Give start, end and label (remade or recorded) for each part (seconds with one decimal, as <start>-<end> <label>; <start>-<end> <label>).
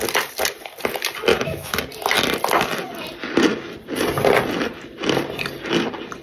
0.0-1.3 recorded; 1.3-1.8 remade; 1.8-6.2 recorded